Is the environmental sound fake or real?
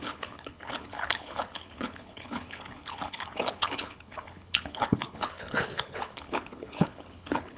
fake